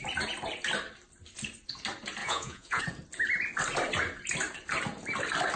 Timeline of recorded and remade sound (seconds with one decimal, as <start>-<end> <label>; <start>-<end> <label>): 0.0-2.2 recorded; 2.2-2.8 remade; 2.8-5.6 recorded